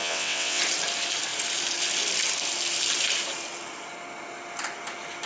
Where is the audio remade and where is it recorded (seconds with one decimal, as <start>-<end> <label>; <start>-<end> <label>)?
0.0-0.6 remade; 0.6-5.3 recorded